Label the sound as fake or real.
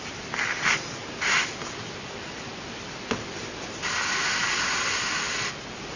real